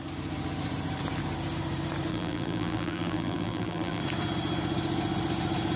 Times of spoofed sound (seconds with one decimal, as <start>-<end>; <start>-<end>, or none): 2.1-4.0

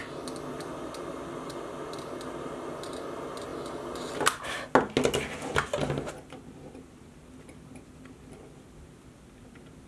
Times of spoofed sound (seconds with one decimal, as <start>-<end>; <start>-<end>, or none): none

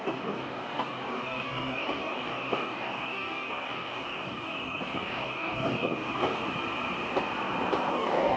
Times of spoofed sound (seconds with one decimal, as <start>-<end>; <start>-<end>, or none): 0.0-6.4; 7.9-8.4

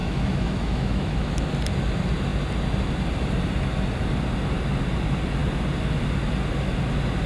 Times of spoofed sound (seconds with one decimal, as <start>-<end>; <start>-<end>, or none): 0.0-1.3

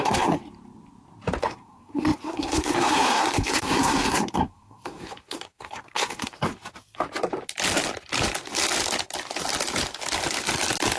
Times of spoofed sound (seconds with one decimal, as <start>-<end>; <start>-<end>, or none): 0.0-0.4; 1.4-6.5

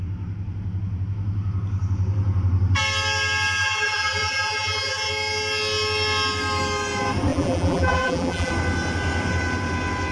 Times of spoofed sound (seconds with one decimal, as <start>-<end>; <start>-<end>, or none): 3.6-5.1; 7.3-8.5

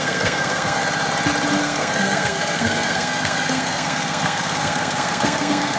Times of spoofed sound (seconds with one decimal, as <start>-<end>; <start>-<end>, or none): 0.0-0.8; 1.6-5.8